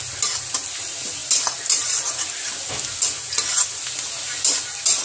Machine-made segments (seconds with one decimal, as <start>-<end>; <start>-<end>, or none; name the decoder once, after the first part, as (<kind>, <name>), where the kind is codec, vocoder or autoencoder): none